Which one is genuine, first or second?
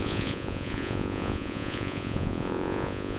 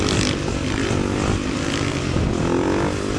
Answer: second